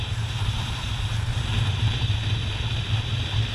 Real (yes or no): no